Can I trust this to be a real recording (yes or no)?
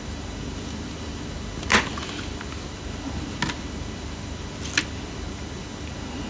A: yes